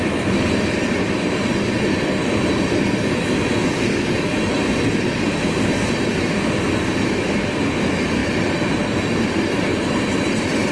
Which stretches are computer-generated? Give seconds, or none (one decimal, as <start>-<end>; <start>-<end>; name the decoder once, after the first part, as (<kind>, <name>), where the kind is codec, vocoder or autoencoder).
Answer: 9.7-10.7 (vocoder, BigVGAN v2)